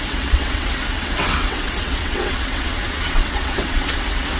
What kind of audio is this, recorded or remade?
remade